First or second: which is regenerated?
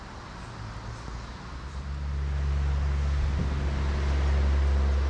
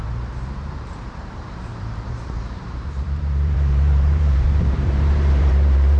second